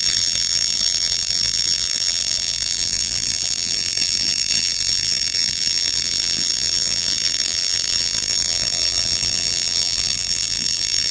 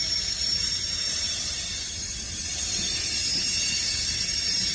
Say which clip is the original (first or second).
second